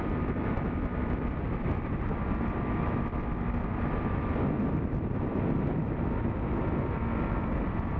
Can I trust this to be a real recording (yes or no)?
yes